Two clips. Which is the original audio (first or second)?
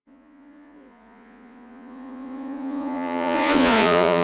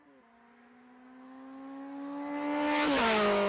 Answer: second